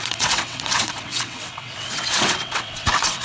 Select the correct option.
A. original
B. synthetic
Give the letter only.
B